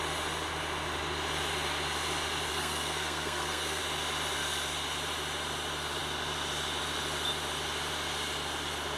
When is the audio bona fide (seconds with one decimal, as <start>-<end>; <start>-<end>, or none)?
0.0-2.5; 3.8-9.0